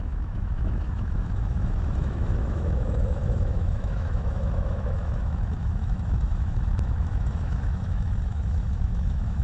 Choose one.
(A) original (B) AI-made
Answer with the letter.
B